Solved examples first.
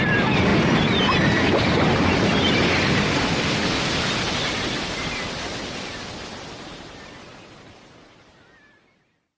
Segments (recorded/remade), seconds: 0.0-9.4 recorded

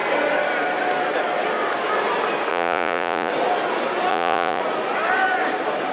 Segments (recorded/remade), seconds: 0.0-2.5 recorded; 2.5-3.3 remade; 3.3-4.1 recorded; 4.1-4.6 remade; 4.6-5.9 recorded

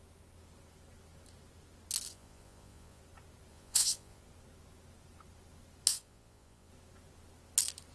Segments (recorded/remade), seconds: 0.0-2.1 recorded; 2.1-3.0 remade; 3.0-3.5 recorded; 3.5-4.2 remade; 4.2-5.9 recorded; 5.9-6.7 remade; 6.7-7.9 recorded